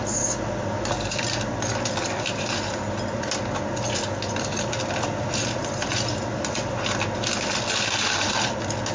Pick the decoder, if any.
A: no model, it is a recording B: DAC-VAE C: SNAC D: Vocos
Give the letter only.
A